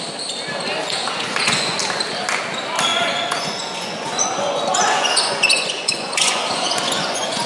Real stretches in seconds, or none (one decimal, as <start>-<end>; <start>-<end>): 0.0-0.8; 1.8-2.9